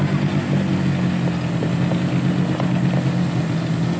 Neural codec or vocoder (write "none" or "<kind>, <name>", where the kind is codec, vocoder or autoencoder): none